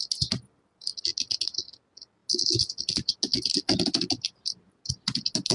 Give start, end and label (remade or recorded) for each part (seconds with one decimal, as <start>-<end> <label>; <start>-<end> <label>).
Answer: 0.0-5.5 recorded